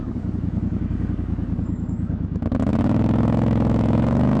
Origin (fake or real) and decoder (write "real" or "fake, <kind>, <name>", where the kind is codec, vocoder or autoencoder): fake, codec, DAC